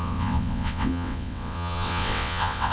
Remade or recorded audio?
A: remade